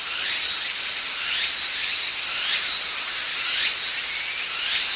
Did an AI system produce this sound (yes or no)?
no